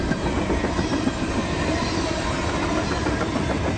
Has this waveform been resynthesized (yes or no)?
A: no